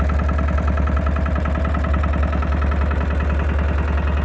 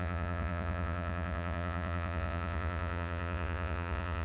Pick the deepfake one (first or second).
second